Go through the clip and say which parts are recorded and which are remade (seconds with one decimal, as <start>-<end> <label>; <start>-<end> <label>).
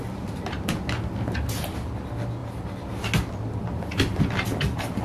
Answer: 0.0-5.0 recorded